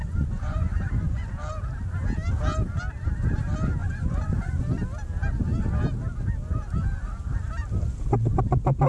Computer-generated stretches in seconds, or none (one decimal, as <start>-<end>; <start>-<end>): 0.0-1.3; 3.8-4.6